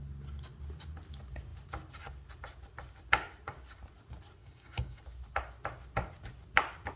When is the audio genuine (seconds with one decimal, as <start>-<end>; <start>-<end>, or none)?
0.0-4.4; 5.0-7.0